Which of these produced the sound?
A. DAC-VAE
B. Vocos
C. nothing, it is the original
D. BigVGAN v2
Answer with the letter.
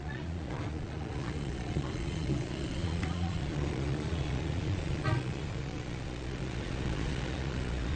B